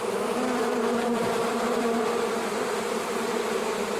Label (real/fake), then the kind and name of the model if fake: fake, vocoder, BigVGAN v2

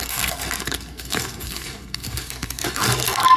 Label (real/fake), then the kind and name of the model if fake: fake, codec, SNAC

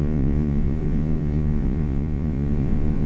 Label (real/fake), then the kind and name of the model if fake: fake, vocoder, Vocos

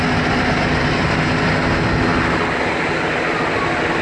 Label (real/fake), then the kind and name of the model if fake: real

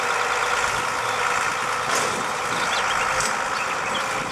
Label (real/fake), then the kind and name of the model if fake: real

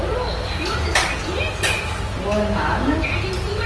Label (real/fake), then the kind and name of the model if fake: real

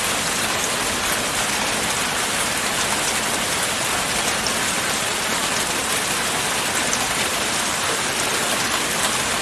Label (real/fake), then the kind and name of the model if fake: real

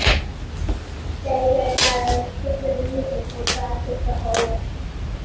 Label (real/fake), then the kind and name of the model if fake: real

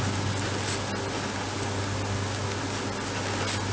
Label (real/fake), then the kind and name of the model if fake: real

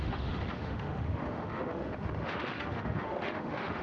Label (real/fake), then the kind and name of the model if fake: fake, autoencoder, DAC-VAE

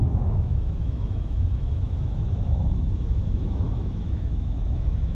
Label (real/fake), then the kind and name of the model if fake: fake, autoencoder, DAC-VAE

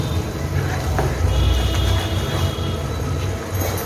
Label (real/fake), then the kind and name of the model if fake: real